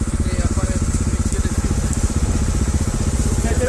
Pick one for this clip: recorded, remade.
recorded